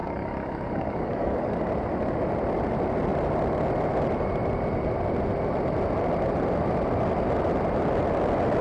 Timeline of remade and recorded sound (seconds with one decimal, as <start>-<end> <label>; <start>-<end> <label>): 0.0-1.6 remade; 1.6-8.6 recorded